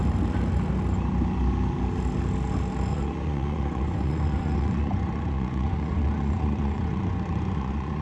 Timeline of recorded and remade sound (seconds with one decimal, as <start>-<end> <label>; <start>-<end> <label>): 0.0-2.9 recorded; 2.9-8.0 remade